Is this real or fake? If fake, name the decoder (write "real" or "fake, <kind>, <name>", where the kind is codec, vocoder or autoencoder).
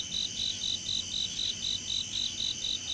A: real